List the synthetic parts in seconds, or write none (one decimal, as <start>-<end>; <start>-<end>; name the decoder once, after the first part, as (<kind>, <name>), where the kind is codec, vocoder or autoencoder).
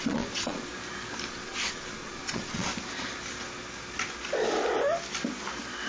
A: 0.0-0.7 (vocoder, Vocos); 1.3-2.7